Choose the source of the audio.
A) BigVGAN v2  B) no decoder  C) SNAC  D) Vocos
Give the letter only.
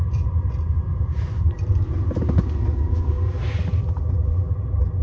B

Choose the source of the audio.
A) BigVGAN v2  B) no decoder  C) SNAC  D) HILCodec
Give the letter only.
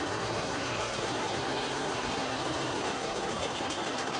C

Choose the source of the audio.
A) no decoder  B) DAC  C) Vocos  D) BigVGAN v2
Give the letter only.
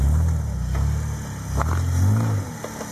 A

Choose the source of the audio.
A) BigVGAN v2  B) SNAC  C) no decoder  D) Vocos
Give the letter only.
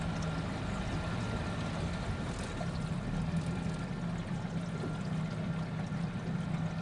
C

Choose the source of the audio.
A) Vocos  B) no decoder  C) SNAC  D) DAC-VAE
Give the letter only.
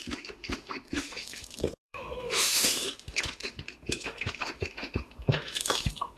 D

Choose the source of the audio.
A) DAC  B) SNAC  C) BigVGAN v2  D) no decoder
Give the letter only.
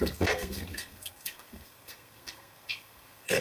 B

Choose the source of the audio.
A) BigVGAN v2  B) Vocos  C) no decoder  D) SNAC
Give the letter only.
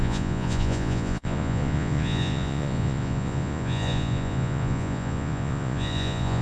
B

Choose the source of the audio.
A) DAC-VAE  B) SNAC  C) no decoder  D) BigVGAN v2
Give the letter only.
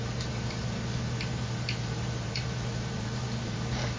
D